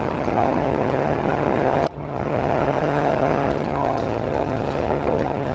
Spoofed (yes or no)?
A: yes